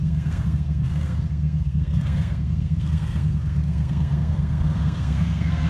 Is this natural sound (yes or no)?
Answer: no